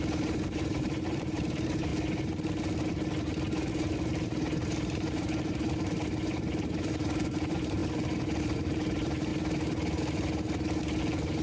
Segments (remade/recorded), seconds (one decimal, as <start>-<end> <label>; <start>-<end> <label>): 0.0-1.9 remade; 1.9-3.7 recorded; 3.7-7.8 remade; 7.8-8.4 recorded; 8.4-9.3 remade; 9.3-11.0 recorded; 11.0-11.4 remade